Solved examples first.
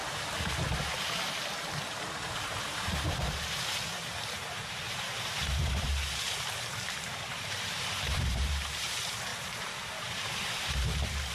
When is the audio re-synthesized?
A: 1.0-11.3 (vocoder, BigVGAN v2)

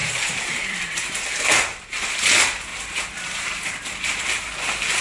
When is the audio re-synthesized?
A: 0.0-2.1 (vocoder, BigVGAN v2); 2.7-4.4